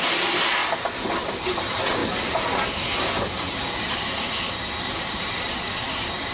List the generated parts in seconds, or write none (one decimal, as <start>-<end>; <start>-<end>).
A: 0.0-0.6; 1.3-2.0; 5.8-6.3